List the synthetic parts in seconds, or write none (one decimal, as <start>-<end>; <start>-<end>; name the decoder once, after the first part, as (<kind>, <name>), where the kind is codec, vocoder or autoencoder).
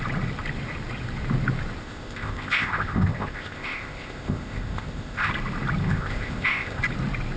1.8-5.3 (codec, ZipCodec); 5.8-6.8